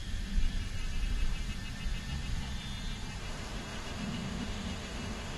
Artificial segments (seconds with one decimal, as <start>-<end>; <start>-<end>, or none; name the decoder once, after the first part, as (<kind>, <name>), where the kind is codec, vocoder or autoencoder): 3.2-5.4 (autoencoder, DAC-VAE)